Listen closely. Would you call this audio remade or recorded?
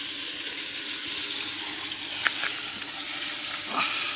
recorded